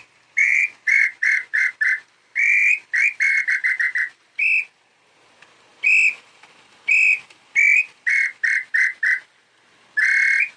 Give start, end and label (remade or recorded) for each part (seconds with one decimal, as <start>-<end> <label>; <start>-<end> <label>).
0.0-0.4 recorded; 0.4-1.7 remade; 1.7-10.6 recorded